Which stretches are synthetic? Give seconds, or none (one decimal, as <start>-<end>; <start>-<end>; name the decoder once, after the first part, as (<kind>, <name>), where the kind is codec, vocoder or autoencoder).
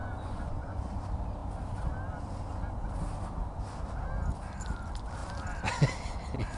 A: 0.0-0.8 (vocoder, Vocos)